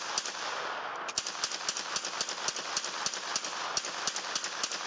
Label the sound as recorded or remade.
recorded